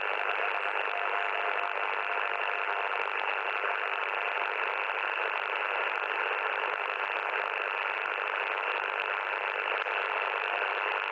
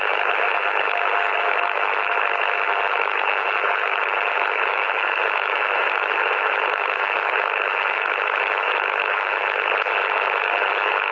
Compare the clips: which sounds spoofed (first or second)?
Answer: second